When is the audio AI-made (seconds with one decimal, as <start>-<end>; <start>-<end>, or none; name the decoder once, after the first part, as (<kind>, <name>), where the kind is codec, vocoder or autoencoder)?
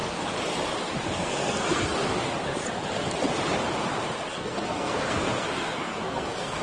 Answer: 1.0-1.9 (codec, SNAC); 4.3-6.6